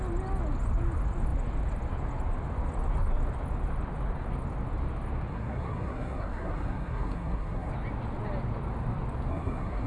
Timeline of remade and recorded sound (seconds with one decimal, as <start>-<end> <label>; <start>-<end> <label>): 0.0-5.3 recorded; 5.3-7.7 remade; 7.7-9.3 recorded; 9.3-9.9 remade